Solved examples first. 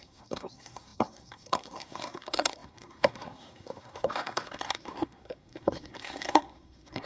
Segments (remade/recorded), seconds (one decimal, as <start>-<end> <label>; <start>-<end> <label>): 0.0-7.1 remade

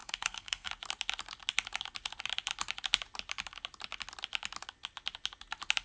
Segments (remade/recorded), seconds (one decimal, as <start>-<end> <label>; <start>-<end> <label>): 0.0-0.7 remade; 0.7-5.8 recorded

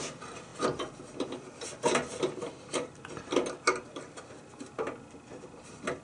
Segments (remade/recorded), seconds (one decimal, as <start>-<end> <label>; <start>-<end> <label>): 0.0-6.0 recorded

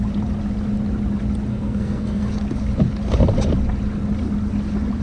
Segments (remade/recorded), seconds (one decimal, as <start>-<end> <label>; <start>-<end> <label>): 0.0-1.5 recorded; 1.5-2.3 remade; 2.3-5.0 recorded

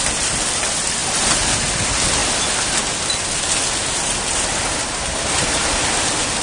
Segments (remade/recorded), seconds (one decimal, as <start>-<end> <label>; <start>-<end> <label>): 0.0-6.4 recorded